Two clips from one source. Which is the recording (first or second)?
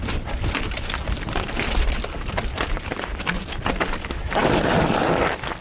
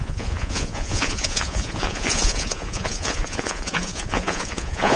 first